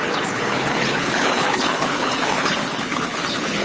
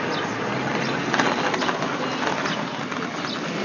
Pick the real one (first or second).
second